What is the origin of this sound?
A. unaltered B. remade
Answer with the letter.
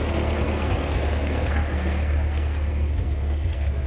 B